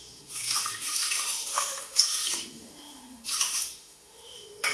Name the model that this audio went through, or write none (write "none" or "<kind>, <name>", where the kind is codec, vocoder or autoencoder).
autoencoder, DAC-VAE